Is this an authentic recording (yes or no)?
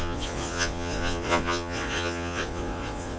no